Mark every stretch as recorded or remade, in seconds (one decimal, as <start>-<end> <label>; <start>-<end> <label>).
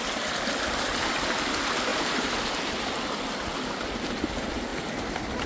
0.0-5.5 recorded